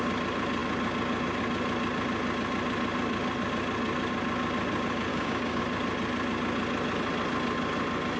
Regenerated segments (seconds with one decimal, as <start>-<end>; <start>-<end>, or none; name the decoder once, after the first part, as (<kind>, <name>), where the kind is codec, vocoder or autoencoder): 5.1-5.6 (codec, DAC)